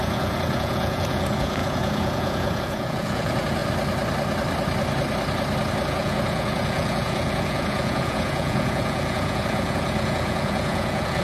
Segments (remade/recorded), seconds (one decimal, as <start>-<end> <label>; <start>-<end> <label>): 0.0-3.6 remade; 3.6-5.9 recorded; 5.9-11.2 remade